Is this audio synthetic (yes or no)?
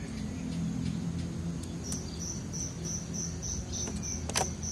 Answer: no